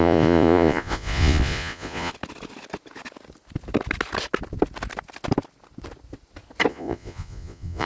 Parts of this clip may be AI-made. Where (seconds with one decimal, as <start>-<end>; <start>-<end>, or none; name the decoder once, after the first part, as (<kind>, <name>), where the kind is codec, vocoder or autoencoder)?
0.0-2.1 (vocoder, Vocos); 6.7-7.8